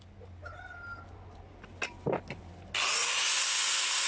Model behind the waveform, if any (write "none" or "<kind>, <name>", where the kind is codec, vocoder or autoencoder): none